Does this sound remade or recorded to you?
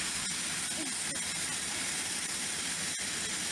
recorded